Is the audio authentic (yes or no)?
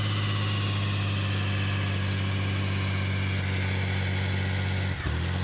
yes